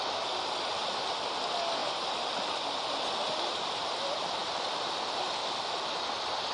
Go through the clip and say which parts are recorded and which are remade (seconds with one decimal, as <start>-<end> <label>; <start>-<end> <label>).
0.0-1.8 recorded; 1.8-2.5 remade; 2.5-4.4 recorded; 4.4-5.1 remade; 5.1-6.5 recorded